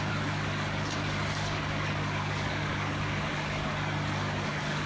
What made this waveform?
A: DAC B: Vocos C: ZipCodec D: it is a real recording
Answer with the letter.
A